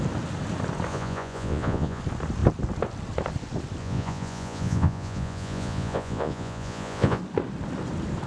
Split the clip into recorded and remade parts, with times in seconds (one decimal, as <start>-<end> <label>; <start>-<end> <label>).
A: 0.0-0.9 recorded; 0.9-2.0 remade; 2.0-3.8 recorded; 3.8-7.2 remade; 7.2-8.3 recorded